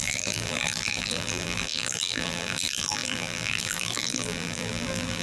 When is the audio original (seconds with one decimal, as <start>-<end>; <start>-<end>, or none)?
none